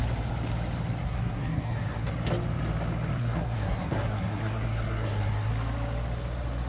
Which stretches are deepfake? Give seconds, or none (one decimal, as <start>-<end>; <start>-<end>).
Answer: 1.0-2.1; 3.1-5.5

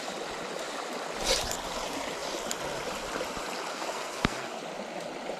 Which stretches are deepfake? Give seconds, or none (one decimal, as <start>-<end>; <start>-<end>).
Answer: 3.7-4.6

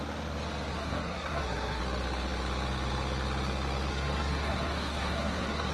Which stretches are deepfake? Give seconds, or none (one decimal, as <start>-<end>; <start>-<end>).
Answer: 0.7-1.8; 3.9-5.7